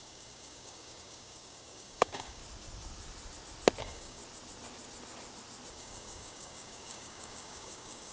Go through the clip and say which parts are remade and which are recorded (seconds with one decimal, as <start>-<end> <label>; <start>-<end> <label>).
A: 0.0-2.4 remade; 2.4-3.8 recorded; 3.8-4.2 remade; 4.2-5.7 recorded; 5.7-8.1 remade